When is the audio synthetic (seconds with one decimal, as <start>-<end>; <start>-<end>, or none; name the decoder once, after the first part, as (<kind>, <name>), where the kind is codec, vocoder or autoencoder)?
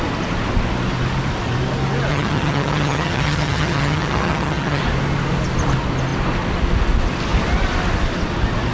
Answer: 2.1-4.8 (vocoder, HiFi-GAN)